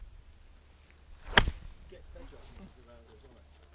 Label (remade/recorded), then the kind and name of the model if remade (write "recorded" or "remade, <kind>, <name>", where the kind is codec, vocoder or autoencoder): recorded